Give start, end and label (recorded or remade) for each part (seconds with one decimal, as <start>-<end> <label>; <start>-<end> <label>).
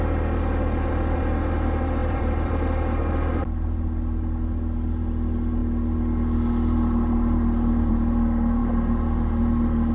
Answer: 0.0-2.0 recorded; 2.0-2.5 remade; 2.5-9.9 recorded